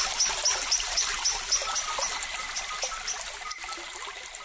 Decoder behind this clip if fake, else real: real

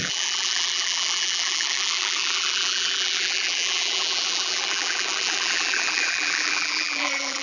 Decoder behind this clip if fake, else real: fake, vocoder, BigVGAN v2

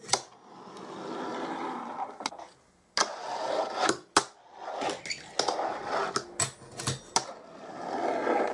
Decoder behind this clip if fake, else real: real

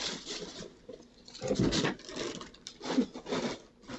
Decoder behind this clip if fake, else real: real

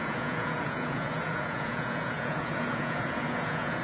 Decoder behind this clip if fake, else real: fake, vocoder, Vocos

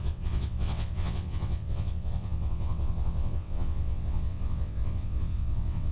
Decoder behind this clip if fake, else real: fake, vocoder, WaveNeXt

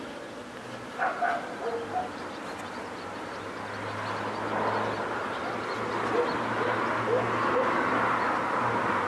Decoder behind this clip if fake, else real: real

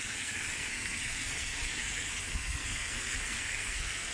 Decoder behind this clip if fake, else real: fake, codec, SNAC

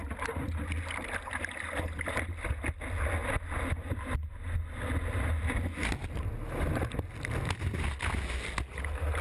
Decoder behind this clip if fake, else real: real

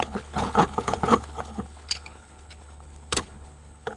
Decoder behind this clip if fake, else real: fake, codec, HILCodec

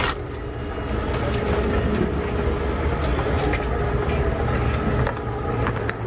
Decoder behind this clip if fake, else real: real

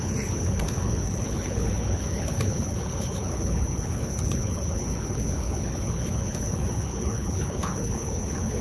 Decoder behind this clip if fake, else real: fake, codec, HILCodec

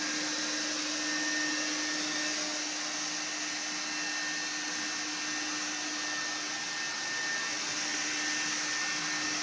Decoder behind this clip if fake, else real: real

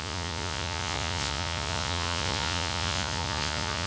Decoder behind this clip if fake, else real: fake, vocoder, Vocos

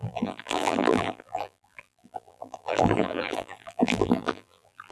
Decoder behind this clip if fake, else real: fake, vocoder, BigVGAN v2